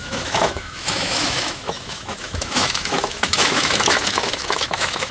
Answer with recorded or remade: remade